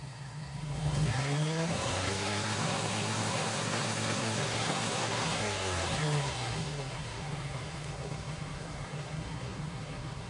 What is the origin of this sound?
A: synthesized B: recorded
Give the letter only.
A